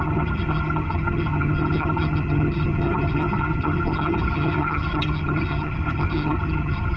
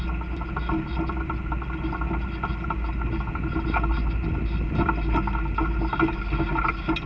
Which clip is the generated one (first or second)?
first